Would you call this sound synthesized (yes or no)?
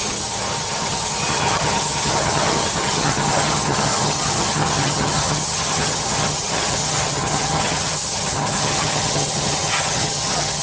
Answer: yes